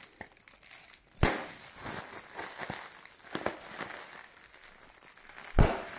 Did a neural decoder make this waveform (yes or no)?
no